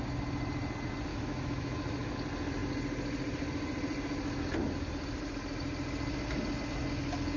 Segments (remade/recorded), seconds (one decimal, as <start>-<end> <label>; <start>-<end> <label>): 0.0-1.1 recorded; 1.1-2.1 remade; 2.1-7.4 recorded